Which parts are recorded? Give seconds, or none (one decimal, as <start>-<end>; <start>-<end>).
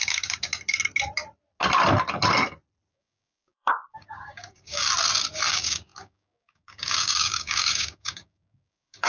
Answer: 0.5-2.9; 4.8-5.5